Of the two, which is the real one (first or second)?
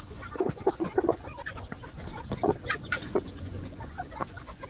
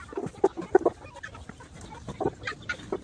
second